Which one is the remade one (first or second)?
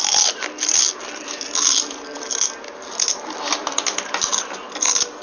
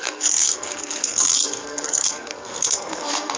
second